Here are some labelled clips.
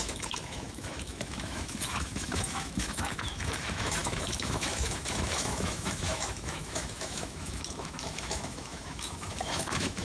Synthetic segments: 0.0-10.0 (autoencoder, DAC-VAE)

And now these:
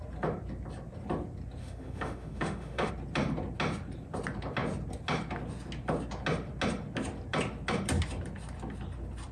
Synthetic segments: 1.6-2.9 (autoencoder, DAC-VAE)